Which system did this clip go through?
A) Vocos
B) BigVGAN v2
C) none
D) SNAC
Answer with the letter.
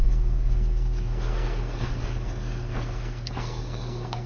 D